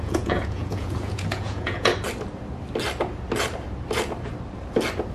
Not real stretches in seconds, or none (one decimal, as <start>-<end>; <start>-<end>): 0.0-1.9